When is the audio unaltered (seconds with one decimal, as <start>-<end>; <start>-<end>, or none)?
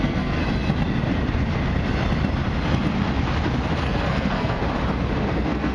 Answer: 0.4-3.8; 4.6-5.3